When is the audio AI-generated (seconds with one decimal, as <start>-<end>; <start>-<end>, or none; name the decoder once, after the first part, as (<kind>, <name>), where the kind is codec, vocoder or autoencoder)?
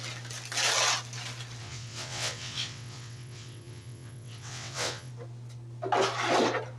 1.6-5.1 (vocoder, WaveNeXt)